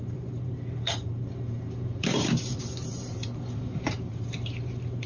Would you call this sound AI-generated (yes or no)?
yes